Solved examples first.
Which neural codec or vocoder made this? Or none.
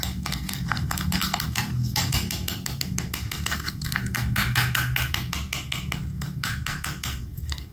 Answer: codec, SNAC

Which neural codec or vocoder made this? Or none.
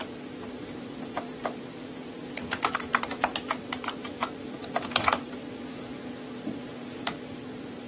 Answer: vocoder, BigVGAN v2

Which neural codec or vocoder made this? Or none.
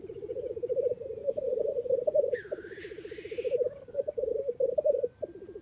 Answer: none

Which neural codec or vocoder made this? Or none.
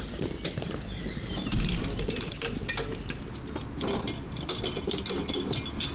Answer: none